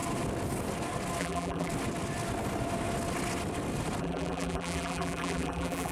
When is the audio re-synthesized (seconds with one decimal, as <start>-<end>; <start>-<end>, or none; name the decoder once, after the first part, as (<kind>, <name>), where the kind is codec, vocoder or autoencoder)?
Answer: 1.2-1.7 (vocoder, BigVGAN v2); 4.0-5.9